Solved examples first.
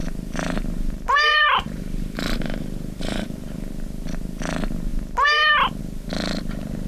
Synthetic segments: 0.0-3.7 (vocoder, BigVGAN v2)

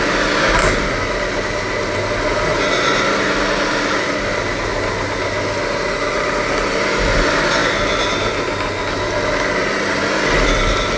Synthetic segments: none

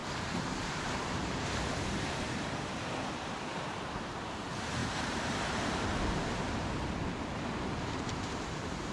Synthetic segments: 0.0-8.9 (vocoder, BigVGAN v2)

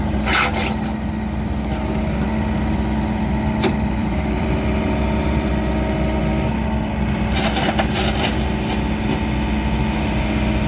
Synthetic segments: 4.0-5.5 (vocoder, BigVGAN v2)

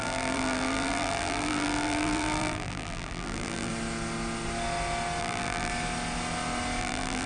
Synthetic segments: 0.0-3.7 (vocoder, BigVGAN v2); 5.2-5.7; 6.8-7.3